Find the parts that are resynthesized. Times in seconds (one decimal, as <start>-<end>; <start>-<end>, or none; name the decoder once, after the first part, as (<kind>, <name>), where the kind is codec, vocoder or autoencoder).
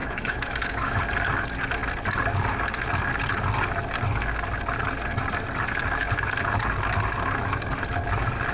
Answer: 0.0-1.0 (autoencoder, DAC-VAE)